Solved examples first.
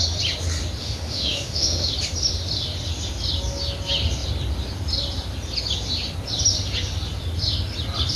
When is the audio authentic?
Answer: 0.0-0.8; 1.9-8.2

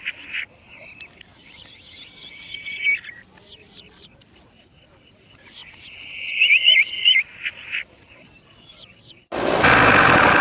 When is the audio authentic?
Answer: 0.0-10.4